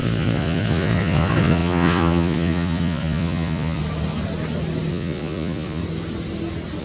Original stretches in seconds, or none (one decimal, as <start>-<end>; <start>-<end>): 3.8-4.9; 5.8-6.8